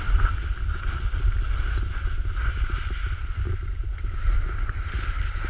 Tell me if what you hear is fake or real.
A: real